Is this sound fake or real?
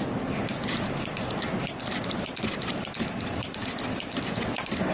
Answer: fake